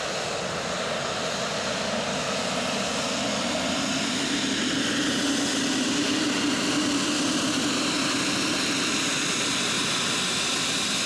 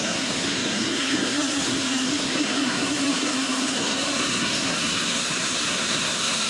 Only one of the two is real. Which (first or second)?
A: first